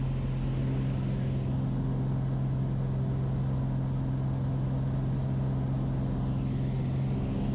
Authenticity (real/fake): real